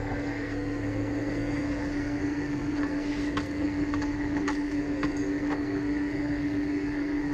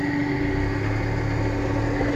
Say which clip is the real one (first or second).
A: second